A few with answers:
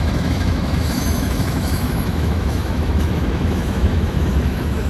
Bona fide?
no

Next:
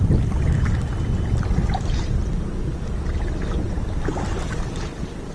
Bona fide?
yes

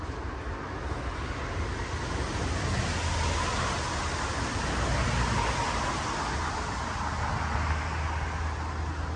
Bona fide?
yes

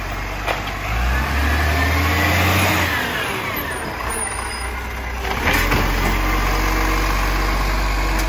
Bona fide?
yes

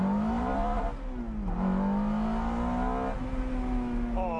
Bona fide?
yes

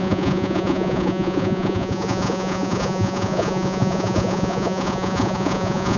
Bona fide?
no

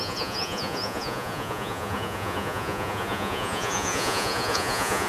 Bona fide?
no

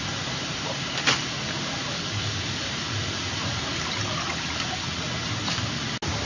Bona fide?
yes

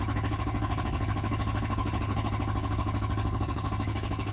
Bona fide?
no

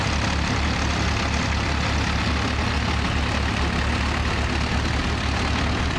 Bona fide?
yes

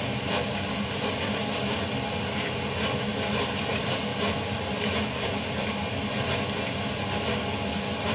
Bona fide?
yes